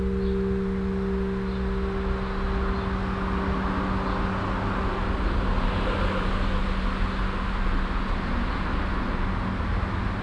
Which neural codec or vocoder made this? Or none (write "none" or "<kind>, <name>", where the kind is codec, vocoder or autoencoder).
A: none